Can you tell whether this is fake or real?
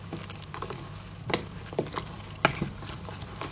real